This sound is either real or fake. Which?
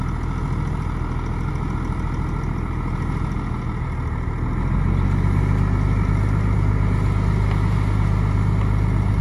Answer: real